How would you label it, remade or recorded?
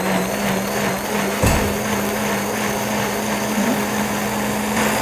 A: recorded